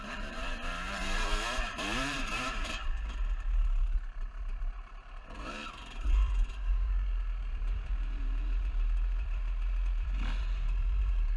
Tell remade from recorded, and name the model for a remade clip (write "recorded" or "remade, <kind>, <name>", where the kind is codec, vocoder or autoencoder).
remade, vocoder, BigVGAN v2